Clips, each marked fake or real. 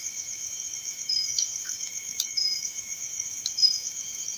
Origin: fake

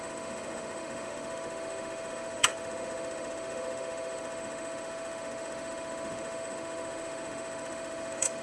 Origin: fake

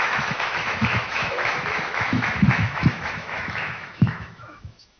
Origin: fake